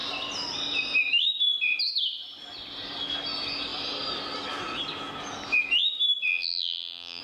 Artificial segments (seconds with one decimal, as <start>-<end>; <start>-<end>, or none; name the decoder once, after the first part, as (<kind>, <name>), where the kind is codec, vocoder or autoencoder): 6.3-7.2 (vocoder, BigVGAN v2)